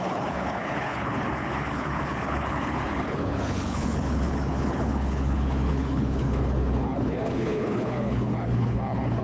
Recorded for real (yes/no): no